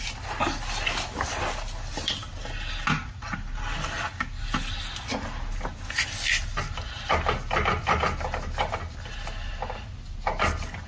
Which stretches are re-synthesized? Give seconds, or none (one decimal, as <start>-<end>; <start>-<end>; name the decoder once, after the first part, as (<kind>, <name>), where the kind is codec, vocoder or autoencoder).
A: none